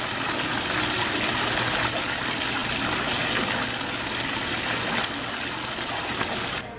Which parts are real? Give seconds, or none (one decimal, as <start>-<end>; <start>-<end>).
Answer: 0.0-6.8